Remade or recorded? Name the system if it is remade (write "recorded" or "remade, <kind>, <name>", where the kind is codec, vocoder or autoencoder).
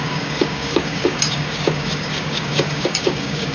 remade, codec, DAC